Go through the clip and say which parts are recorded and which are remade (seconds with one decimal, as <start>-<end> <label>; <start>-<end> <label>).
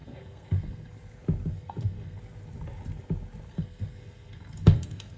0.0-0.9 remade; 0.9-1.5 recorded; 1.5-2.2 remade; 2.2-3.5 recorded; 3.5-5.2 remade